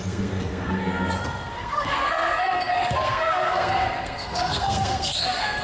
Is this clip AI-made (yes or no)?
yes